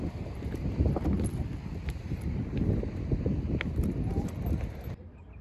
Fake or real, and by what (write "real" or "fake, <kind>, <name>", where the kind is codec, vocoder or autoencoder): real